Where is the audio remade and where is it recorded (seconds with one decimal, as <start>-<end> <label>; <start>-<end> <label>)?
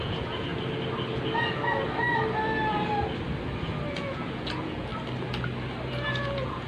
0.0-0.5 remade; 0.5-3.9 recorded; 3.9-4.9 remade; 4.9-6.1 recorded; 6.1-6.7 remade